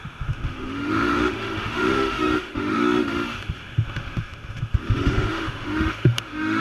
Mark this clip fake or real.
fake